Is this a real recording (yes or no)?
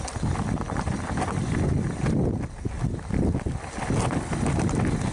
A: yes